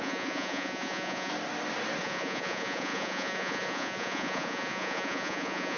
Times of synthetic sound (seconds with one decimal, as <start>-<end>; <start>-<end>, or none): 0.0-1.3; 2.0-5.8